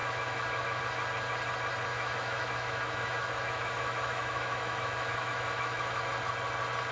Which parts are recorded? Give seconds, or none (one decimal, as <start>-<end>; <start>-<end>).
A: 0.8-1.9; 6.0-6.9